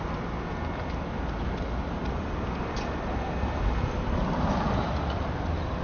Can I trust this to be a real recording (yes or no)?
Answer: yes